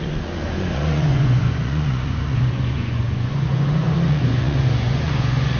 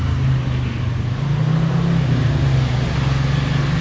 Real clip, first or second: second